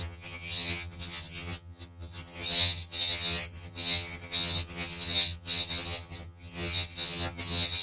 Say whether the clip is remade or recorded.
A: remade